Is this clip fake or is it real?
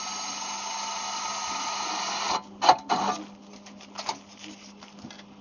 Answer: real